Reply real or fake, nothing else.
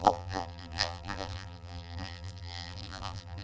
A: fake